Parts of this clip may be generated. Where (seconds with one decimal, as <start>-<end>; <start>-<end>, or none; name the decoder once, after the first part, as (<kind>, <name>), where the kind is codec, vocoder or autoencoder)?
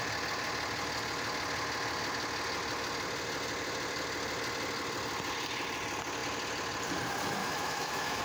7.4-8.2 (autoencoder, DAC-VAE)